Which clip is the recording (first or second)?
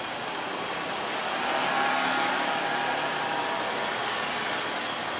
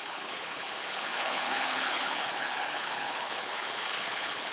first